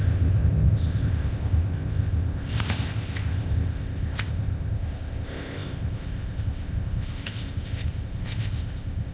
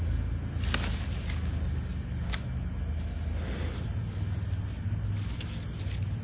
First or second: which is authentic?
second